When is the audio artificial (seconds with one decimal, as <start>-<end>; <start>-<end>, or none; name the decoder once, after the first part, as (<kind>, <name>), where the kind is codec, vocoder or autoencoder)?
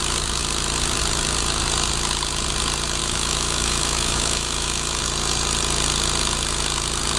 3.0-5.0 (autoencoder, DAC-VAE)